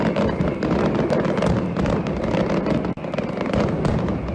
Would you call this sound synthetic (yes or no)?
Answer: no